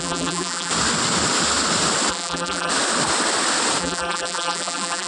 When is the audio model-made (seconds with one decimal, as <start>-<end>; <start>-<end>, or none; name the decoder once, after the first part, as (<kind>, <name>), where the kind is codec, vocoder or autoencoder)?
0.0-0.7 (vocoder, BigVGAN v2); 2.1-2.7; 3.8-5.1